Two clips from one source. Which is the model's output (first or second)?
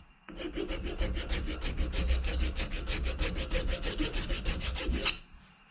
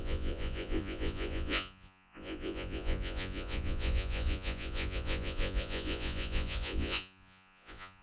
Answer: second